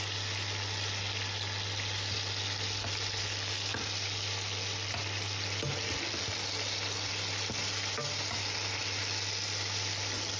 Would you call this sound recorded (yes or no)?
yes